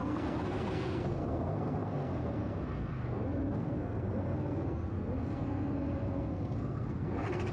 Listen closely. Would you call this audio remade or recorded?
remade